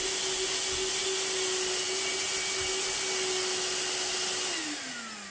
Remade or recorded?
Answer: recorded